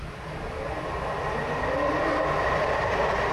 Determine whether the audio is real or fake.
real